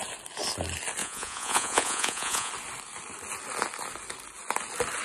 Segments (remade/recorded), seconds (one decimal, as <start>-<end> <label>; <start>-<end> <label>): 0.0-1.0 recorded; 1.0-2.5 remade; 2.5-5.0 recorded